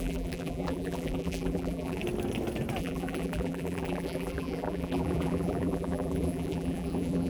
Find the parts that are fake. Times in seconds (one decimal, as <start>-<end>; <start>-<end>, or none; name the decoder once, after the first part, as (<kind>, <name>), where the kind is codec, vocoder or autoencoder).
0.0-2.0 (vocoder, BigVGAN v2); 2.8-7.3